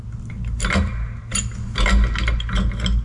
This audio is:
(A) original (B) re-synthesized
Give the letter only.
A